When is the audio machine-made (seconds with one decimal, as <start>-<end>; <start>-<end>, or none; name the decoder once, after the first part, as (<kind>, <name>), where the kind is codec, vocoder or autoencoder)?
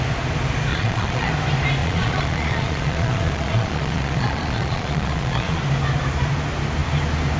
0.7-1.3 (vocoder, Vocos); 1.8-5.6